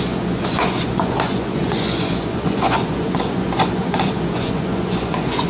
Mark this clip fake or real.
fake